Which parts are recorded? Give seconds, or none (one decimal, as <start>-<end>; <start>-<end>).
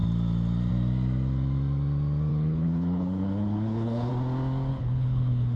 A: 0.0-2.3; 4.1-4.7